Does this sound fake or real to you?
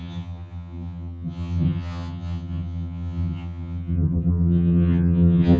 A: fake